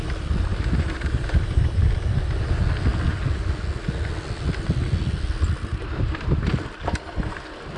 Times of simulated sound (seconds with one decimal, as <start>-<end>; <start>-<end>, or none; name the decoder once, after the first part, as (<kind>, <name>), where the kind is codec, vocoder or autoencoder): 0.5-1.8 (vocoder, BigVGAN v2); 5.7-6.6